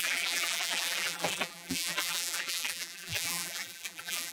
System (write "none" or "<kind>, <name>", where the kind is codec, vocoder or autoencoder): vocoder, BigVGAN v2